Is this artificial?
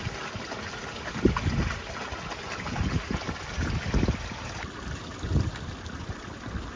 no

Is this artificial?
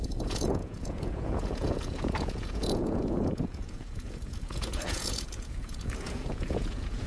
yes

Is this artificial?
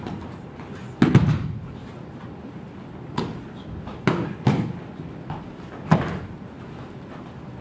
no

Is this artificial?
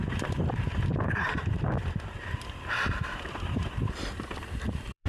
yes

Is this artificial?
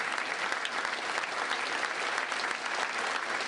no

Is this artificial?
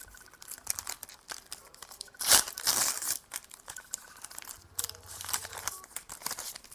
yes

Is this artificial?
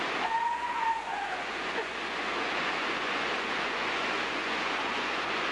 yes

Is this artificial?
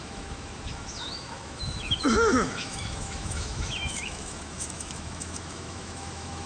yes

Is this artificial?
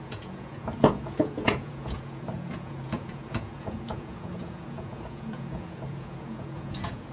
yes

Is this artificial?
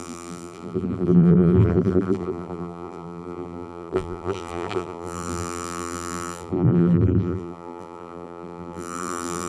yes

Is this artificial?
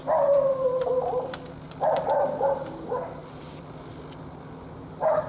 no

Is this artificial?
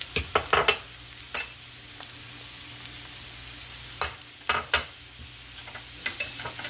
no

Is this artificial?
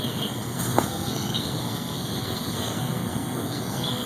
yes